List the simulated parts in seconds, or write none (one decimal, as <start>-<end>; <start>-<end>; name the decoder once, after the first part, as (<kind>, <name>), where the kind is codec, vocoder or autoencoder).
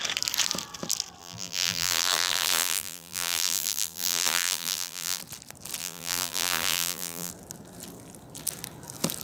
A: 1.2-5.2 (vocoder, BigVGAN v2); 5.8-7.3